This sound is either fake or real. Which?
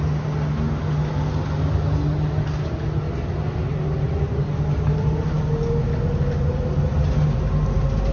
real